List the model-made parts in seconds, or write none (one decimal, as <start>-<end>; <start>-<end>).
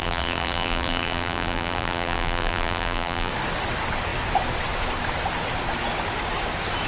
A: 0.0-3.3